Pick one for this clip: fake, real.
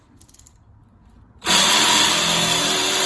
real